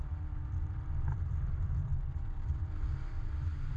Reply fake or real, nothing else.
fake